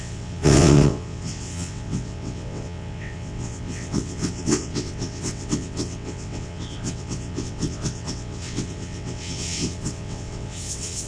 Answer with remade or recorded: remade